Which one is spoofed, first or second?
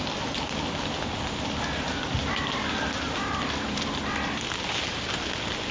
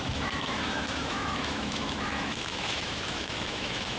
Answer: second